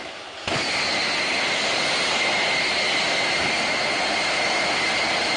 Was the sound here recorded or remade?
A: recorded